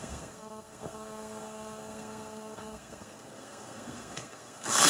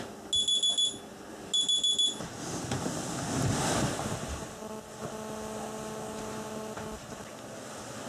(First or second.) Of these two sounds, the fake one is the first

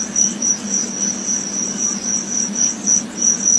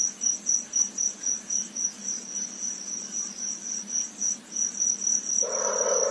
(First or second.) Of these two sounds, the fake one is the second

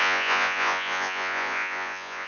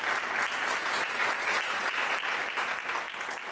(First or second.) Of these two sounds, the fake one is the first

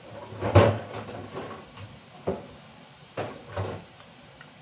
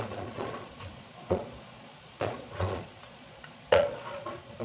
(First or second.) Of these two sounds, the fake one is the second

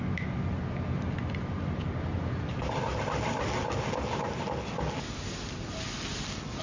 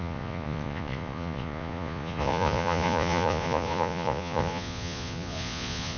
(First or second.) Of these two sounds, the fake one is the second